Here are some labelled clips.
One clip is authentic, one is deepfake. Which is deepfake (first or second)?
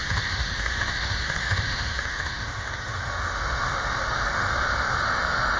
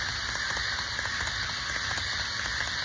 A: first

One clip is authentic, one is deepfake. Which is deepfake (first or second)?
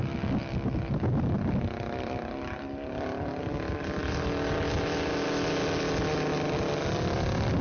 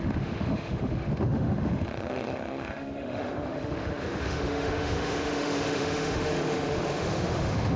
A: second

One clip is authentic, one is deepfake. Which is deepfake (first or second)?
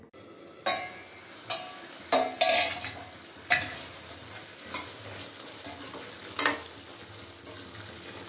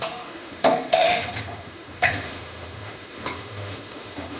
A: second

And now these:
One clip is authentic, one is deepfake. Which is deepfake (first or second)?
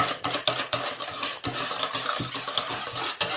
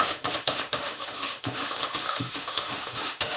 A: second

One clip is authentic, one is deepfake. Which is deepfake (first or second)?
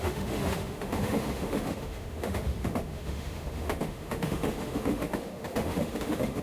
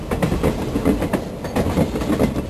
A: first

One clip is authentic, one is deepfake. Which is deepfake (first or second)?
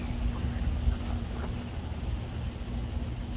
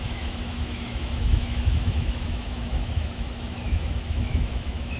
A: second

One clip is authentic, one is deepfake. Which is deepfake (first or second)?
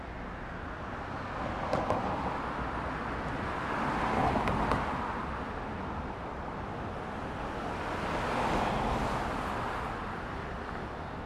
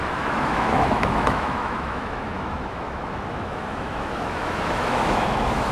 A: second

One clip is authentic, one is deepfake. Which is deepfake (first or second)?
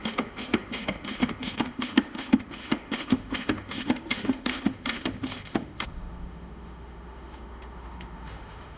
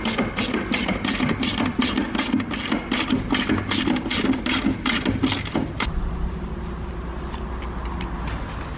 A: first